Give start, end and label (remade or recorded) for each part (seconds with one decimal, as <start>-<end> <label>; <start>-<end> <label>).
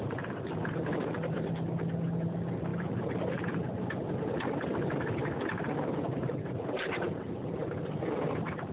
0.0-2.7 recorded; 2.7-3.6 remade; 3.6-7.4 recorded; 7.4-8.7 remade